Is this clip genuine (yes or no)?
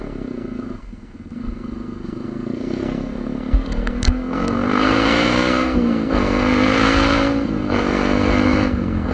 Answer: no